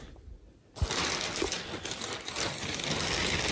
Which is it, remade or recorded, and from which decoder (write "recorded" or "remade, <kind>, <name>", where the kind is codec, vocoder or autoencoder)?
recorded